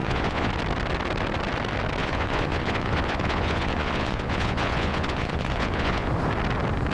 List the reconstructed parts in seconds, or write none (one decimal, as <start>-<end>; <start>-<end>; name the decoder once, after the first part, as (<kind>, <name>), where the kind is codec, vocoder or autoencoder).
0.0-0.5 (vocoder, Vocos); 2.0-6.1